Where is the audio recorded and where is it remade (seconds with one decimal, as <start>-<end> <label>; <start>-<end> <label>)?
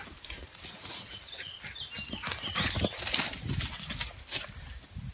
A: 0.0-0.4 recorded; 0.4-1.6 remade; 1.6-5.1 recorded